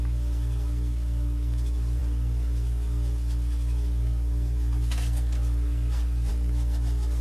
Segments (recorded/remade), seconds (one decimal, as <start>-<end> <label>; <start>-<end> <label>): 0.0-7.2 remade